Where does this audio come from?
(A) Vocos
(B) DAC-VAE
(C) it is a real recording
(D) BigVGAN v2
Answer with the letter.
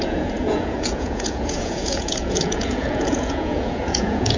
A